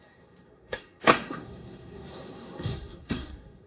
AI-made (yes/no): yes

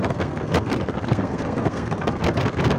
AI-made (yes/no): yes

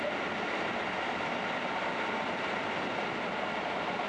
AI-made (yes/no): no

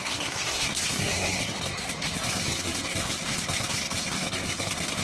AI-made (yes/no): yes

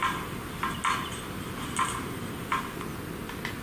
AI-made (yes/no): no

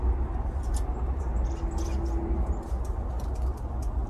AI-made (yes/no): no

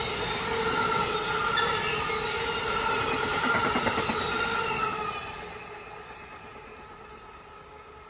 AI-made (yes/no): no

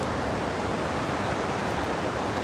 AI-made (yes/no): no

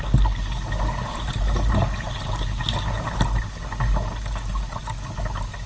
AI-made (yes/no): no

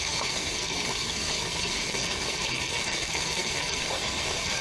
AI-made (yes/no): yes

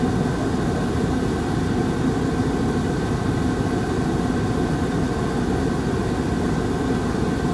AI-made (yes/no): no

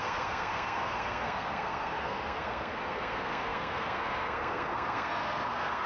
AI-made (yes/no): yes